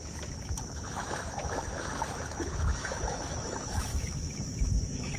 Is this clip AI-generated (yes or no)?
yes